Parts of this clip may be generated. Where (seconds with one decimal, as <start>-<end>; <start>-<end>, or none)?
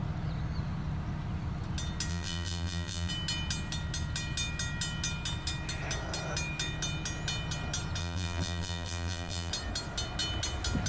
2.1-3.1; 8.0-9.5